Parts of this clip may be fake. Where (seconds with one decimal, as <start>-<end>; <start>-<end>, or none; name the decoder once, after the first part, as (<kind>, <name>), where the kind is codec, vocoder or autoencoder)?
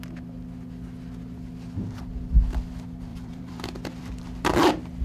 3.1-4.2 (vocoder, BigVGAN v2)